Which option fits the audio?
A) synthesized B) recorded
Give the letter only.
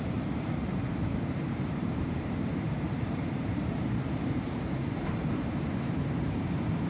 A